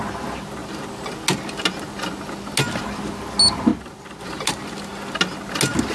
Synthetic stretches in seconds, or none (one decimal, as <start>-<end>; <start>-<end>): none